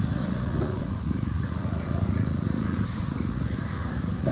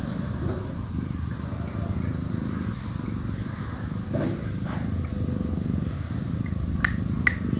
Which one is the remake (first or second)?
first